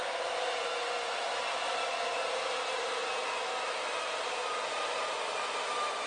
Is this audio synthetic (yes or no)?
yes